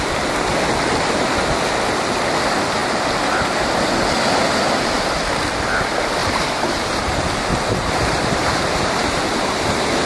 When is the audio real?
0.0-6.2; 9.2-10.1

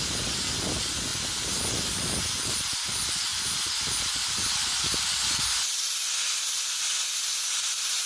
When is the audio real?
0.0-8.1

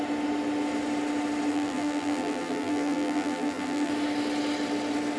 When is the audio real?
0.0-1.5; 3.9-5.2

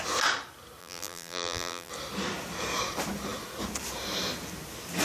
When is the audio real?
0.0-0.8; 1.9-5.0

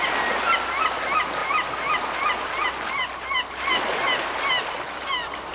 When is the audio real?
0.0-5.5

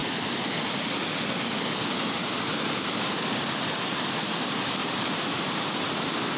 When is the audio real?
0.0-4.8; 6.0-6.4

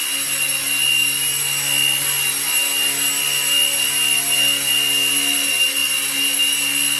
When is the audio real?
0.0-7.0